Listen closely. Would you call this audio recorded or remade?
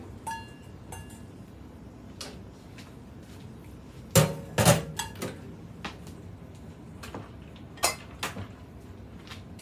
recorded